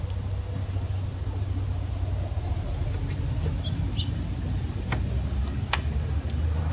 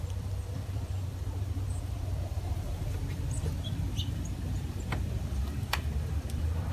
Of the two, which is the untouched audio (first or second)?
first